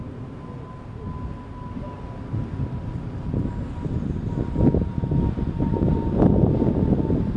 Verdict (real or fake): real